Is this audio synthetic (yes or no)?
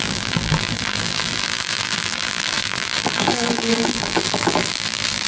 yes